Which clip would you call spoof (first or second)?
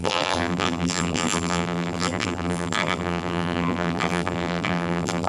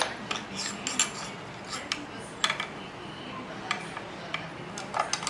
first